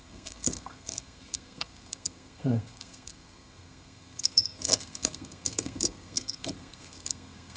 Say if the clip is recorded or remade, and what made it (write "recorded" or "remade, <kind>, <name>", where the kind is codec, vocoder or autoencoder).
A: remade, codec, SNAC